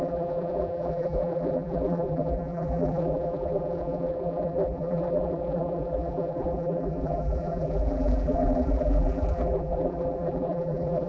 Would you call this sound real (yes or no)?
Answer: no